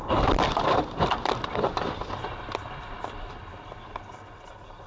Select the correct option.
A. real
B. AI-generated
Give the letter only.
B